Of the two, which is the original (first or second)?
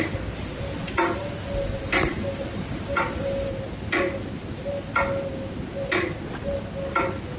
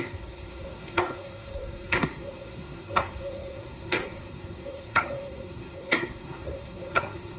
first